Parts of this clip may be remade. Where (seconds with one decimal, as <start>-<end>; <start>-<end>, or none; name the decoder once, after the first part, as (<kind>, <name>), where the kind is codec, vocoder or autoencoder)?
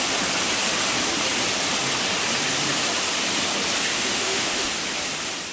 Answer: 3.9-4.7 (autoencoder, DAC-VAE)